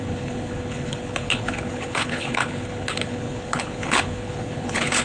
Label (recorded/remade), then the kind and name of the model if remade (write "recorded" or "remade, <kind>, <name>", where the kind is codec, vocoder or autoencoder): remade, codec, HILCodec